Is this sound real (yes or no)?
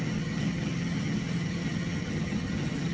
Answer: no